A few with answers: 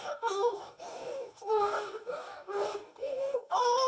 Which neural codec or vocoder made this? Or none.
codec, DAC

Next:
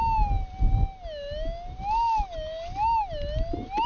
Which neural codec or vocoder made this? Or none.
none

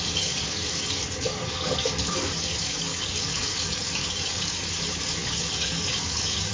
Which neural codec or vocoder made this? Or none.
codec, DAC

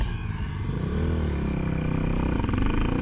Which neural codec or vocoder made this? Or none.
none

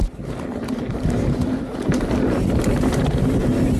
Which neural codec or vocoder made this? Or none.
none